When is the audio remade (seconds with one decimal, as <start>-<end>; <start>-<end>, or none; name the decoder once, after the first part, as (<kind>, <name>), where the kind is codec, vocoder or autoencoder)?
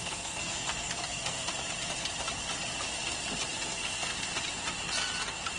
0.0-1.5 (codec, SNAC); 3.5-4.1